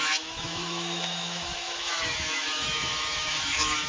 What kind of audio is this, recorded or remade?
remade